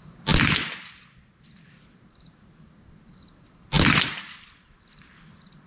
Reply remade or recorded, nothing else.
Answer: recorded